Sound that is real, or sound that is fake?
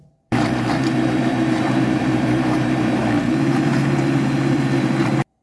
fake